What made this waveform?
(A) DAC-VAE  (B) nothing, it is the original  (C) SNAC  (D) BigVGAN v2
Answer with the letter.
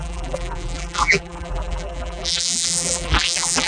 D